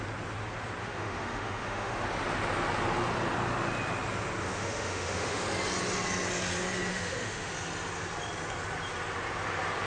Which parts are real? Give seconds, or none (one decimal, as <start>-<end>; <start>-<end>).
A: 0.0-0.8; 2.0-4.4; 5.4-6.9; 7.5-9.9